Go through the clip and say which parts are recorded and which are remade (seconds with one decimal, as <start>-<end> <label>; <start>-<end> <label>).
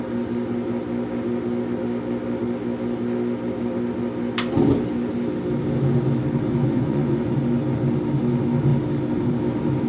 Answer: 0.0-6.5 recorded; 6.5-7.3 remade; 7.3-9.9 recorded